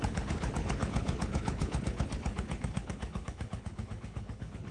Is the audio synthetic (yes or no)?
yes